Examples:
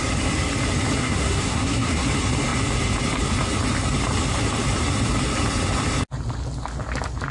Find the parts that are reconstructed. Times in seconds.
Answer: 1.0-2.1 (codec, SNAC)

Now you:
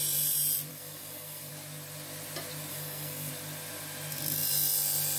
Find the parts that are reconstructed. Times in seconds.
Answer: 0.7-1.5 (codec, SNAC); 2.7-3.3

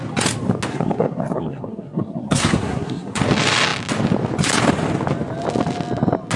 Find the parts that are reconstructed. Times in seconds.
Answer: 0.7-3.2 (codec, SNAC)